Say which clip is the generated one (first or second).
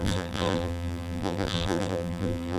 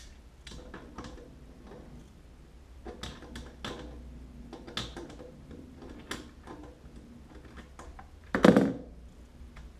first